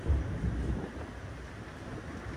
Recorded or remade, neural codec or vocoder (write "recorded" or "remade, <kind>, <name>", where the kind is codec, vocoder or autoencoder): recorded